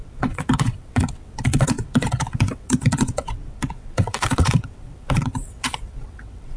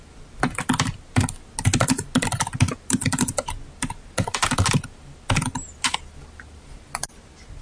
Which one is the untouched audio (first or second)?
second